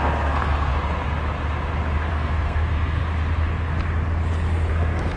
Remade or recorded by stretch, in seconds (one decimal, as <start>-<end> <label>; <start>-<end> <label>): 0.0-0.7 remade; 0.7-2.1 recorded; 2.1-3.0 remade; 3.0-4.7 recorded; 4.7-5.2 remade